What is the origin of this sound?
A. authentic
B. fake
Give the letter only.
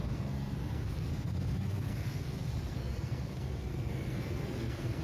B